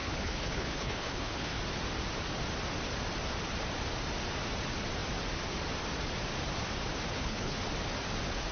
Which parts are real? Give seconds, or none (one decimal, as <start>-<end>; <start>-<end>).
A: 1.6-7.1; 7.6-8.5